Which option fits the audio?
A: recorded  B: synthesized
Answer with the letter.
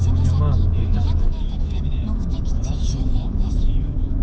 B